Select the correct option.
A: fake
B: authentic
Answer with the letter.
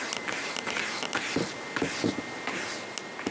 B